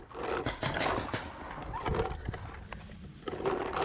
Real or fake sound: real